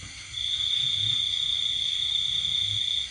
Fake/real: real